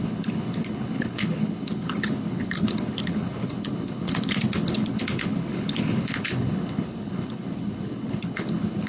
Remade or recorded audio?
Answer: remade